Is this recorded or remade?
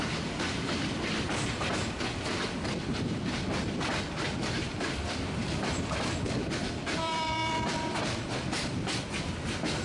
remade